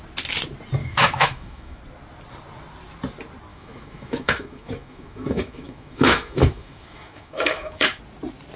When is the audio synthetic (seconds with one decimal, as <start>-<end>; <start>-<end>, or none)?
0.8-1.8; 3.5-8.0